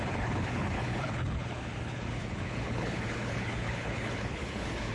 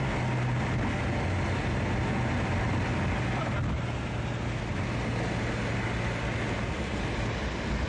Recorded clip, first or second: second